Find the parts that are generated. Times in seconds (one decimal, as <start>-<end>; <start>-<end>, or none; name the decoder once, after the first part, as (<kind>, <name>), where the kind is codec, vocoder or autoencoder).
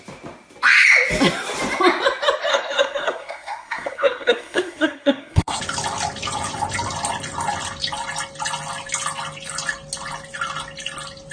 2.5-5.6 (codec, SNAC)